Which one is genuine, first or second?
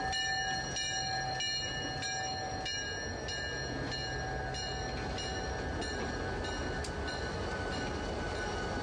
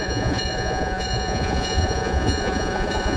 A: first